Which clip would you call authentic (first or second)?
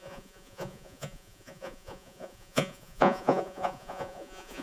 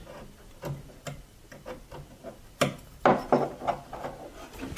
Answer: second